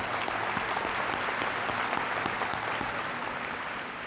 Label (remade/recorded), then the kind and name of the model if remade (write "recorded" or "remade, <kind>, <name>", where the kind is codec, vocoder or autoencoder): recorded